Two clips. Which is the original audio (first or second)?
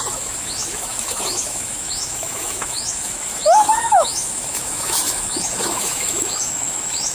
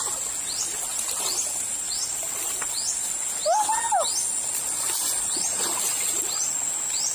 second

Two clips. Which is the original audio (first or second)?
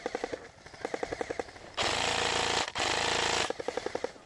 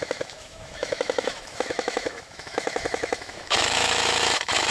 first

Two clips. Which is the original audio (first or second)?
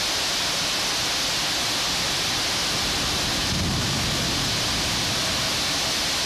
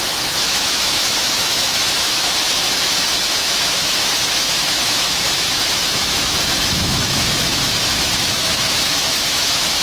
first